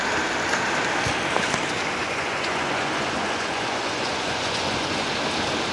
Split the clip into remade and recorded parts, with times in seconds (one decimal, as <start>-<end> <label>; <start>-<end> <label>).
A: 0.0-2.0 recorded; 2.0-5.1 remade; 5.1-5.7 recorded